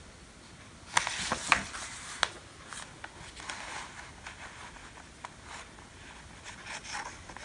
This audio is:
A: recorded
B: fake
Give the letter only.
A